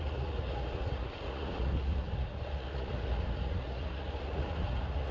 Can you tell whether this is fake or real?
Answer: fake